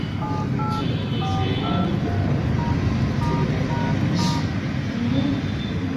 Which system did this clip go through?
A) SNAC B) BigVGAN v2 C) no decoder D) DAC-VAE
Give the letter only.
C